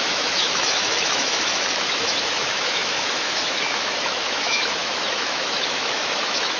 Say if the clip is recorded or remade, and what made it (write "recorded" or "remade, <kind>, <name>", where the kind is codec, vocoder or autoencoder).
remade, autoencoder, DAC-VAE